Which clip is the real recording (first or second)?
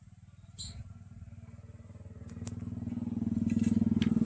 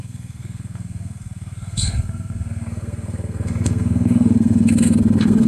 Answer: first